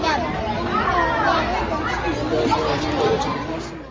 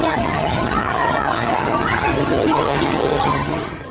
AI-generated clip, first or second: second